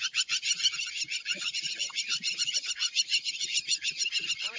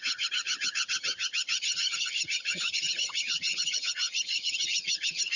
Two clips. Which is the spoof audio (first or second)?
second